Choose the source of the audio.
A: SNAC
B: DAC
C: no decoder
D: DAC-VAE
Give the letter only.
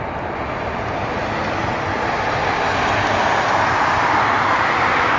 C